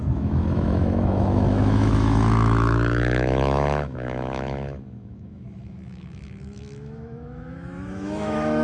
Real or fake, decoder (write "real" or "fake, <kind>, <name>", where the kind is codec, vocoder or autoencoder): fake, autoencoder, DAC-VAE